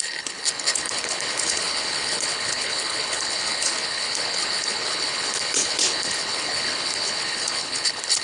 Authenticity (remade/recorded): remade